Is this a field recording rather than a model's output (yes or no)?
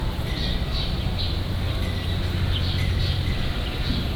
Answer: yes